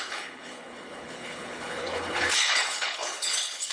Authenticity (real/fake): fake